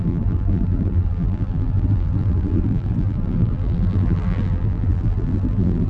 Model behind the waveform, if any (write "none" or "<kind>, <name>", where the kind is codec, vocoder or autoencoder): vocoder, BigVGAN v2